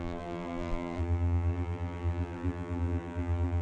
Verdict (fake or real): fake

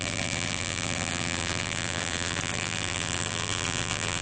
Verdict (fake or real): fake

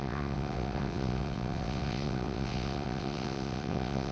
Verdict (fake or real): fake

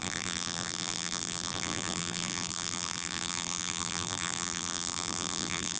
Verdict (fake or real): fake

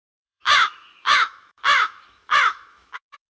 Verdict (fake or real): fake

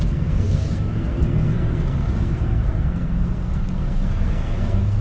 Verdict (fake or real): fake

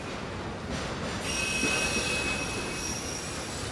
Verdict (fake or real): real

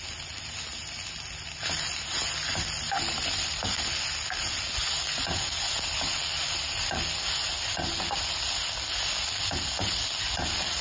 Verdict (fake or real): real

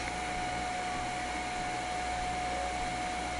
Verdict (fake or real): real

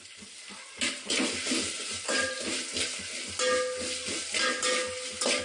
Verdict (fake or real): real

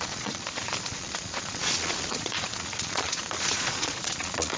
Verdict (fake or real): fake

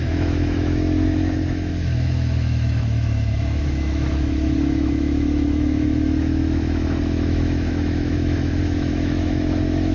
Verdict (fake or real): fake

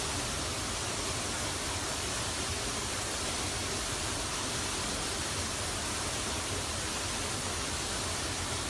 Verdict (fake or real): real